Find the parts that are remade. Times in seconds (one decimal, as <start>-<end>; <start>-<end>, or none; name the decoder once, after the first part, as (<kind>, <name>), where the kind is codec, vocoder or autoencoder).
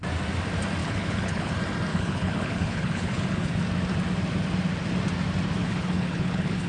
0.8-1.5 (codec, HILCodec); 1.9-3.5; 5.6-6.7